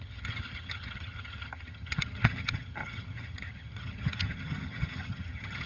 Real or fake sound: fake